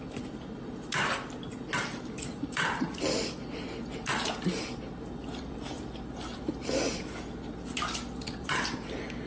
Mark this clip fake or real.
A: fake